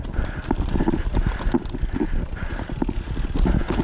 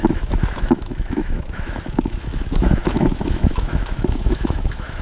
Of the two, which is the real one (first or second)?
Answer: first